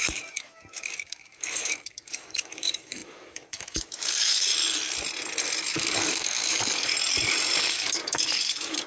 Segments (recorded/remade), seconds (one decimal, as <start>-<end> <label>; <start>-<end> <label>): 0.0-4.5 remade; 4.5-5.7 recorded; 5.7-6.9 remade; 6.9-7.6 recorded; 7.6-8.9 remade